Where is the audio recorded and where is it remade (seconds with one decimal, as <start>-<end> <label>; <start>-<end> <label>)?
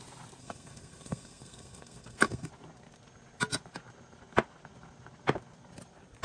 0.0-0.4 recorded; 0.4-2.5 remade; 2.5-6.2 recorded